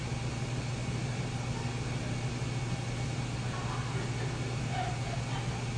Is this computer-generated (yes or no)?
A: no